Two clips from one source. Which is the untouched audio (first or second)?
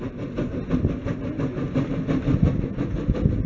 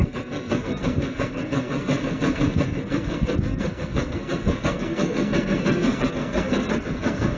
first